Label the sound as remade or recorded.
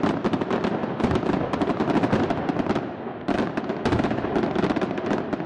recorded